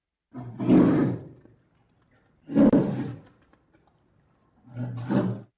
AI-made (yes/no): no